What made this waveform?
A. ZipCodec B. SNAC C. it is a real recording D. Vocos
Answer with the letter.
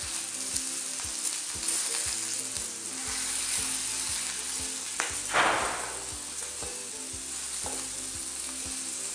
C